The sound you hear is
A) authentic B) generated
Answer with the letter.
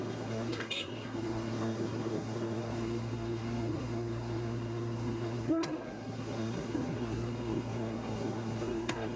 B